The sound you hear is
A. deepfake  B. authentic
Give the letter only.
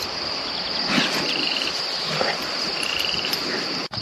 A